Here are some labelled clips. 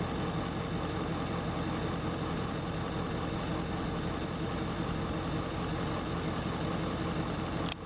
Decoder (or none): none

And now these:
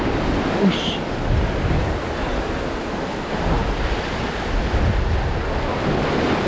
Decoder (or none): none